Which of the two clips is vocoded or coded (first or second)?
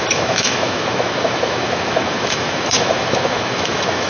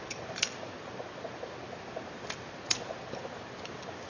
first